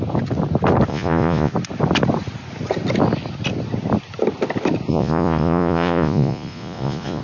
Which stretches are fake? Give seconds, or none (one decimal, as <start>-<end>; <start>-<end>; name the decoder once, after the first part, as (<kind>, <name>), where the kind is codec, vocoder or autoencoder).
0.9-1.5 (vocoder, Vocos); 4.9-7.2